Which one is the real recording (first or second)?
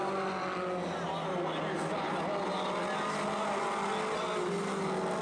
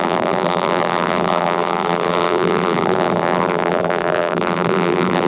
first